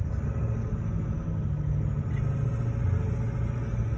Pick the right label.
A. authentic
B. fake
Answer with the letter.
A